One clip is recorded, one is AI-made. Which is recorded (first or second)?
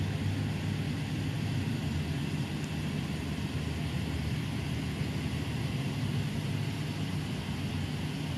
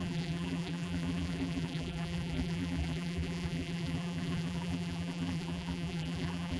first